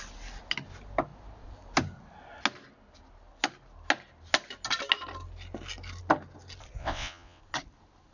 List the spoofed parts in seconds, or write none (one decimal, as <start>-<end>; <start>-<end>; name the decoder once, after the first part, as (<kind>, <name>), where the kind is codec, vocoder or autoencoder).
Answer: 6.8-7.4 (vocoder, WaveNeXt)